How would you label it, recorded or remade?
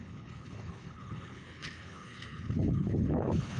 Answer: remade